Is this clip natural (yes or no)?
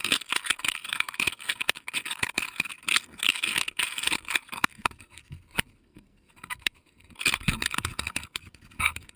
no